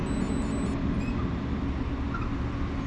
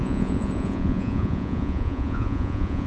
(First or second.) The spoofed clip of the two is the second